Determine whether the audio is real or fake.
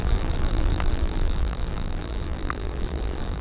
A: fake